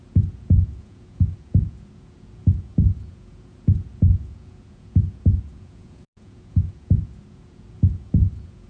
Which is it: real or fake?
fake